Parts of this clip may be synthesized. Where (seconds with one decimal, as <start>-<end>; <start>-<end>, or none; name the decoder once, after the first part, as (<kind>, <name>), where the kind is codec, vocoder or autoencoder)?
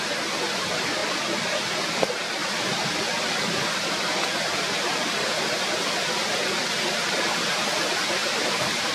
1.0-1.6 (vocoder, BigVGAN v2); 2.4-6.1; 8.2-8.9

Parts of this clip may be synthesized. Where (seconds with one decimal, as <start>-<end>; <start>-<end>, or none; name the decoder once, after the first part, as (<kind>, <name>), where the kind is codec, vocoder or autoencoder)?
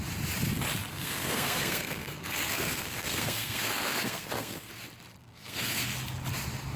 0.9-4.7 (codec, SNAC); 5.2-5.9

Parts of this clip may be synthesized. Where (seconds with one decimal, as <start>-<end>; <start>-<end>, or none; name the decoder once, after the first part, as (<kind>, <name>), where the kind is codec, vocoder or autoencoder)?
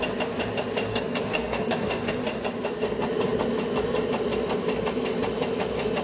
0.9-2.2 (codec, SNAC)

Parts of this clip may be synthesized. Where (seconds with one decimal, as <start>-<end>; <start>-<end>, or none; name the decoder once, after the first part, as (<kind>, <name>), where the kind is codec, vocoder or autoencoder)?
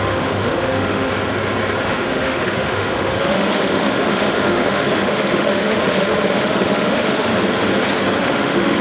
0.0-1.1 (autoencoder, DAC-VAE); 1.8-7.3; 8.2-8.8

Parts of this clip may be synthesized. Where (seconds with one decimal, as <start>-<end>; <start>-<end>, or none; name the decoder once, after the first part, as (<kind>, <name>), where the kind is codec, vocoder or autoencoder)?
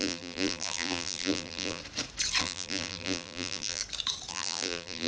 0.0-1.8 (vocoder, BigVGAN v2); 2.4-3.8; 4.3-5.1